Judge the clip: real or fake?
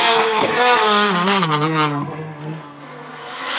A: fake